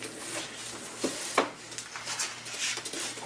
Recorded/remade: recorded